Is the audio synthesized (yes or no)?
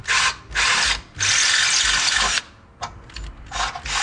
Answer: no